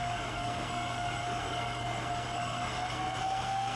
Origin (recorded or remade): remade